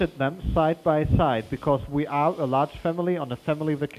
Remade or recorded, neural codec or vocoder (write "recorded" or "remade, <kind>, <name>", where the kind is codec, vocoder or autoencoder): recorded